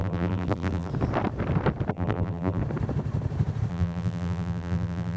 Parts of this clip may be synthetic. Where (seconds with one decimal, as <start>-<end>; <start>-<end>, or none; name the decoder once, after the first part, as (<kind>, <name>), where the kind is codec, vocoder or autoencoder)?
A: 0.0-0.9 (vocoder, BigVGAN v2); 1.9-2.6; 3.7-5.2